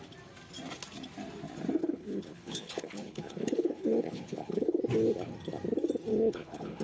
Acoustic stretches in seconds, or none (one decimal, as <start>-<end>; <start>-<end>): 0.0-1.8; 4.8-6.1